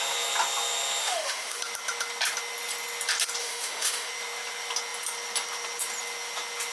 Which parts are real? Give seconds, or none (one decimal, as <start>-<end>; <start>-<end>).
0.0-1.0; 1.6-3.4; 4.1-6.7